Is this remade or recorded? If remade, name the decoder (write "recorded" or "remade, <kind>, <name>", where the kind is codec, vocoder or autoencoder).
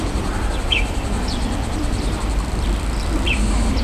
remade, vocoder, BigVGAN v2